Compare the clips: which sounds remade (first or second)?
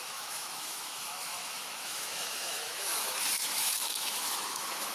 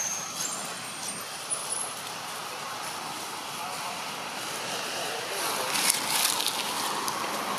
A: first